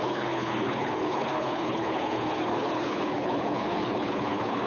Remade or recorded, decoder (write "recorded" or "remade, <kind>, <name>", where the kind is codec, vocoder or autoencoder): remade, codec, HILCodec